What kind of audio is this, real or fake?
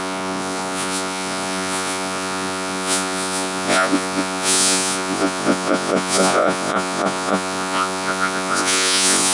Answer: fake